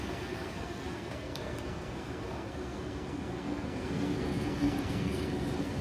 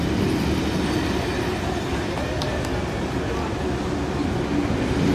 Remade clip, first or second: first